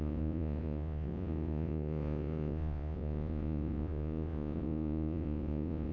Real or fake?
fake